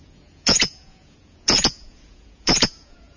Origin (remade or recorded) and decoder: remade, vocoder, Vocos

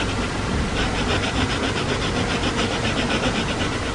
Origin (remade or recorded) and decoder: recorded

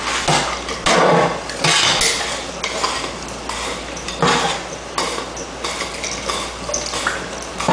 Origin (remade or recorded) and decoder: recorded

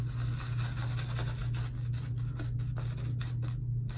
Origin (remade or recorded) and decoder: recorded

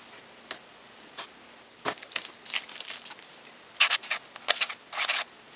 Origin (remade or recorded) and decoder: recorded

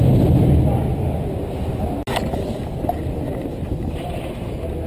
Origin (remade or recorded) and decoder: recorded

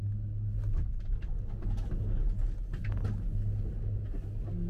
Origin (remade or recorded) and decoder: recorded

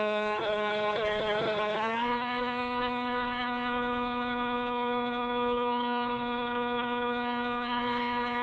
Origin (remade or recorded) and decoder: remade, codec, SNAC